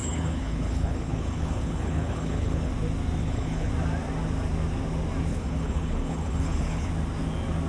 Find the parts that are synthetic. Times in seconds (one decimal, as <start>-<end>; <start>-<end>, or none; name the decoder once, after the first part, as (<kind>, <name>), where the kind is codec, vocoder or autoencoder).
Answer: 0.0-2.7 (codec, HILCodec); 3.2-3.7; 5.3-6.9